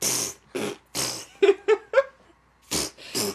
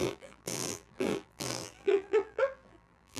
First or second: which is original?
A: first